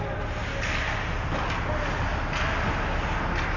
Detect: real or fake real